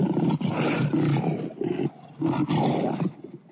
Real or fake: real